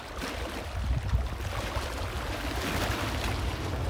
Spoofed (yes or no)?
no